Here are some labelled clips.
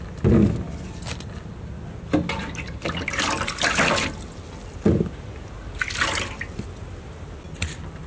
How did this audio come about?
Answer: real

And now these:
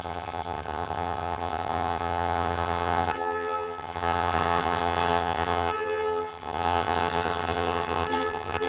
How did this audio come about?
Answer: fake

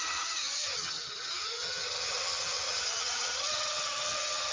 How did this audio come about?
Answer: fake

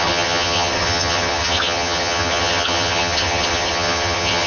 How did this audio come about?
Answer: fake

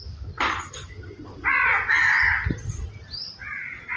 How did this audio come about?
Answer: real